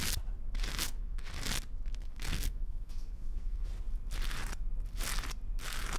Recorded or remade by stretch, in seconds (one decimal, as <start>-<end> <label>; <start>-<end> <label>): 0.0-0.8 recorded; 0.8-1.3 remade; 1.3-2.0 recorded; 2.0-3.7 remade; 3.7-6.0 recorded